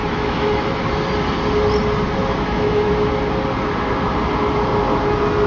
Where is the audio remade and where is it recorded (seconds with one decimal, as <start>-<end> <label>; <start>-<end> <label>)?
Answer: 0.0-0.8 remade; 0.8-2.2 recorded; 2.2-2.9 remade; 2.9-5.5 recorded